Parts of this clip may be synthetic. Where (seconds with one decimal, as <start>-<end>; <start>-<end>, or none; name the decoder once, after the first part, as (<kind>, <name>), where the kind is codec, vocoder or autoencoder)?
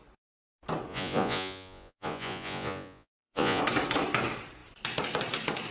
0.9-3.6 (vocoder, Vocos)